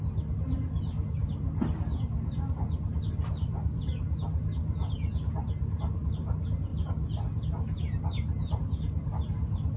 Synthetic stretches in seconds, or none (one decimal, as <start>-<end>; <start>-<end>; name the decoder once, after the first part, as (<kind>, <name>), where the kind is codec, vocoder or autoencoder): none